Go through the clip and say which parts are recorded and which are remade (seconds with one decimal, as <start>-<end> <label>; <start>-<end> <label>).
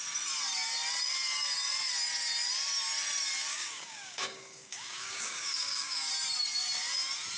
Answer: 0.0-3.5 recorded; 3.5-6.1 remade; 6.1-7.4 recorded